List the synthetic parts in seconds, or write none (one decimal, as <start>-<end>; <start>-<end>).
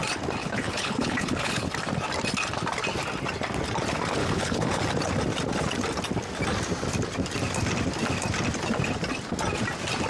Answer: 0.4-1.7; 4.2-4.8